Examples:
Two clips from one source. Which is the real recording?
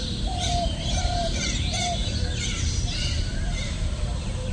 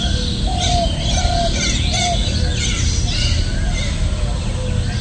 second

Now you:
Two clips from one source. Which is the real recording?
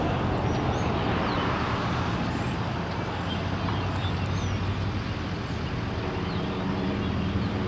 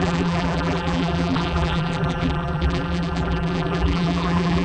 first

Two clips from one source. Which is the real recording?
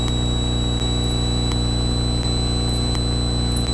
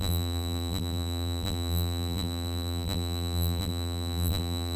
first